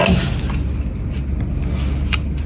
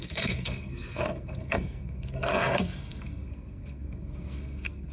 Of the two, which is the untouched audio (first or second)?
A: first